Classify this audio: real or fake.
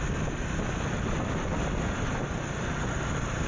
real